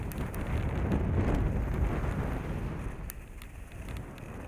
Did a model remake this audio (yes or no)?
no